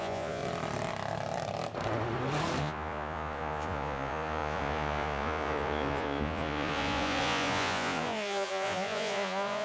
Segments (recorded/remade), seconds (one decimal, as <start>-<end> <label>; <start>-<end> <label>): 0.0-0.4 remade; 0.4-2.6 recorded; 2.6-9.6 remade